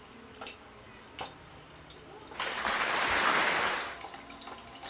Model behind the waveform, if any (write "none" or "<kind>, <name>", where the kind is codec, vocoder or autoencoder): none